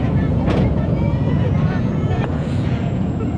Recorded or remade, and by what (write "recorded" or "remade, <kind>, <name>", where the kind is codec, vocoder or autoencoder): remade, vocoder, Vocos